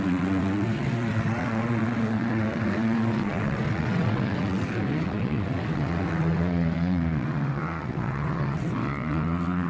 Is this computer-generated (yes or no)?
yes